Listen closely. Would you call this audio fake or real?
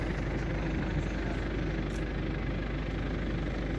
real